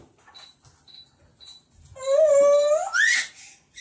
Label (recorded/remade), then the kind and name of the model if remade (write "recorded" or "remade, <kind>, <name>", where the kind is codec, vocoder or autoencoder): recorded